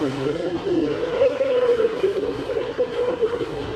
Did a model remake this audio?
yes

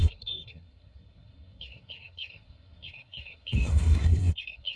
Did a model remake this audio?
yes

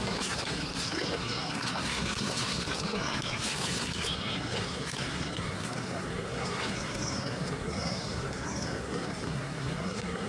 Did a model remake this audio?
yes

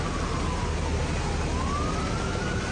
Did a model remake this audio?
no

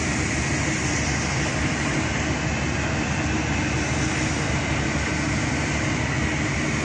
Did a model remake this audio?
no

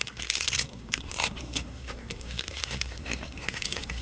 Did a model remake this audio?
yes